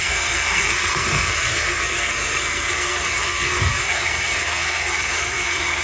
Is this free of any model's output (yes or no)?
no